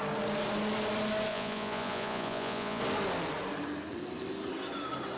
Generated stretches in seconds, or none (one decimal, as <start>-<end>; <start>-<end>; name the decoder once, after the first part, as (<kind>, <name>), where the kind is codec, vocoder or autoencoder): 1.3-2.8 (vocoder, Vocos)